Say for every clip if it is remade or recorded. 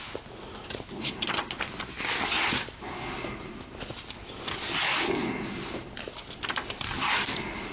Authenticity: recorded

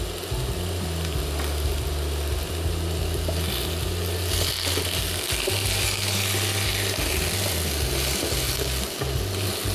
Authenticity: recorded